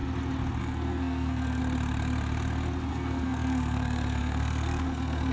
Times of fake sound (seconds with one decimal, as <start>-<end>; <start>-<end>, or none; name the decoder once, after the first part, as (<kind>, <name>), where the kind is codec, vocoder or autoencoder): 0.6-1.6 (codec, SNAC); 2.9-5.3